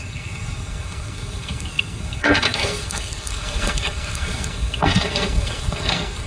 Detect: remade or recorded remade